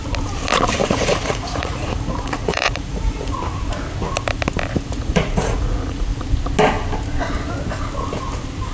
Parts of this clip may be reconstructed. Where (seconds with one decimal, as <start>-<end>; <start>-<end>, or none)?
0.8-3.4; 4.7-6.2